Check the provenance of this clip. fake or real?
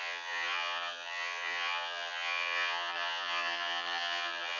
fake